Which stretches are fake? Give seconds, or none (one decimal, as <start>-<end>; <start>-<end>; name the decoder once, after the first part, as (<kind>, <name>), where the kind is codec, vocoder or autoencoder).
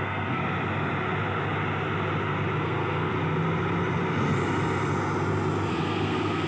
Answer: 0.0-0.4 (codec, SNAC); 2.6-3.1; 5.7-6.5